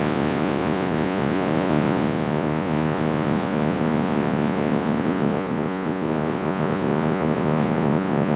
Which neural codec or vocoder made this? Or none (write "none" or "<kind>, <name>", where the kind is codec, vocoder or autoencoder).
vocoder, Vocos